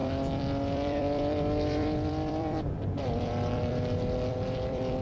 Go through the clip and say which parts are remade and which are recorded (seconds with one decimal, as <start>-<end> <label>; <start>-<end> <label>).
0.0-5.0 remade